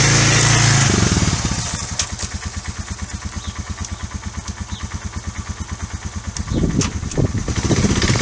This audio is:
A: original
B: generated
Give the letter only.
A